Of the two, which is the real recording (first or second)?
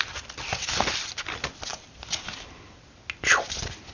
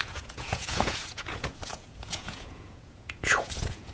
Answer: first